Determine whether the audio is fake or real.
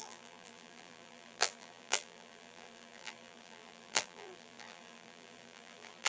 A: fake